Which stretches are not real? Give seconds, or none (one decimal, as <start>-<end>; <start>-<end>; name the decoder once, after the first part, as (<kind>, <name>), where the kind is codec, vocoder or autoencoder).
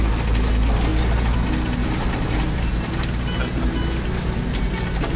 none